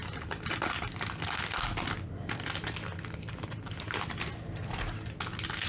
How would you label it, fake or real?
real